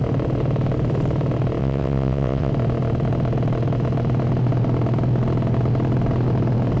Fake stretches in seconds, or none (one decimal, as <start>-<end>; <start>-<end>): 1.6-2.5